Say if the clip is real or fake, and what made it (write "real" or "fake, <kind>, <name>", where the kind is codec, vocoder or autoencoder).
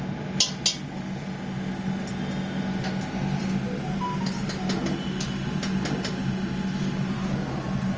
real